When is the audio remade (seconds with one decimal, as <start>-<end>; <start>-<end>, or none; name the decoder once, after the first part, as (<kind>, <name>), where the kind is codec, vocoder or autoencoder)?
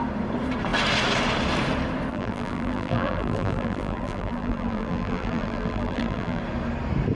2.1-6.4 (vocoder, BigVGAN v2)